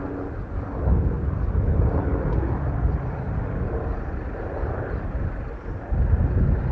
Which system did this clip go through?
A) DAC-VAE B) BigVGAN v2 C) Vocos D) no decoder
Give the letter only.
D